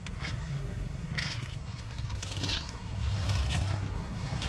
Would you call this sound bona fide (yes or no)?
no